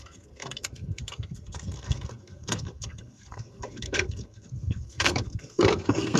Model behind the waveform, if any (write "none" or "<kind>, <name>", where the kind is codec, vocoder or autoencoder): codec, SNAC